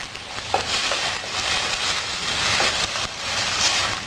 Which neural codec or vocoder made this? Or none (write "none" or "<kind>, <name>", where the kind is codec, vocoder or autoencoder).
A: vocoder, BigVGAN v2